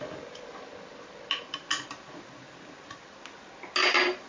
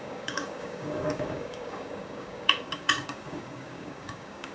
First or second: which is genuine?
first